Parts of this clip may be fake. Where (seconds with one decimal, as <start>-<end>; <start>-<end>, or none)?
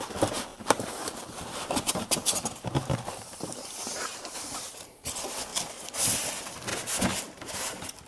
0.5-5.1